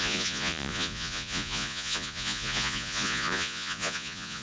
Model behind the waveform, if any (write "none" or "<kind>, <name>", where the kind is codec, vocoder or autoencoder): vocoder, Vocos